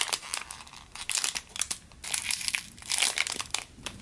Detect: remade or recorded recorded